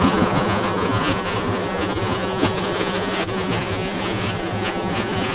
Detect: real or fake fake